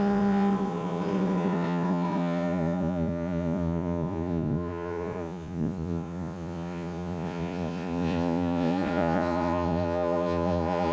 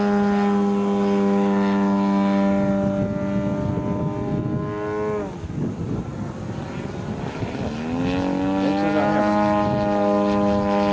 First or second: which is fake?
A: first